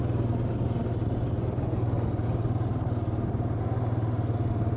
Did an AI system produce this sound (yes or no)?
no